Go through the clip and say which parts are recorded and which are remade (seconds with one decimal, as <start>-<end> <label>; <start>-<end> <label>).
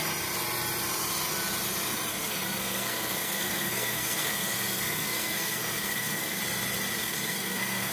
0.0-2.1 recorded; 2.1-6.4 remade; 6.4-7.0 recorded; 7.0-7.9 remade